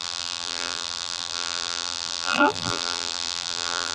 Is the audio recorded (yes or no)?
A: no